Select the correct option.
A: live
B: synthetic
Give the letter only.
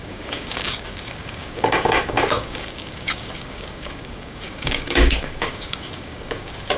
B